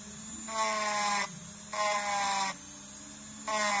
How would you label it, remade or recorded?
recorded